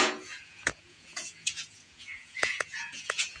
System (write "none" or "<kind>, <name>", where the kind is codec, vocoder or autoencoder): vocoder, Vocos